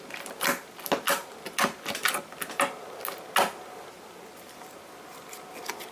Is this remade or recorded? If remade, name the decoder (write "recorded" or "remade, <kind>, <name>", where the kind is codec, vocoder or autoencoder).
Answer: recorded